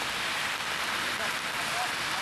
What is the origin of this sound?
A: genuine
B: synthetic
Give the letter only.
A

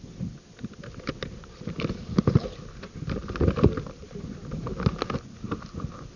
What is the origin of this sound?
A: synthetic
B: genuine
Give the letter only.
B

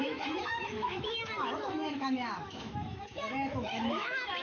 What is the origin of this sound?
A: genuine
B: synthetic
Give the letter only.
B